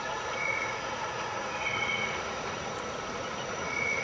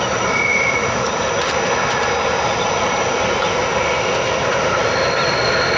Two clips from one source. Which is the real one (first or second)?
second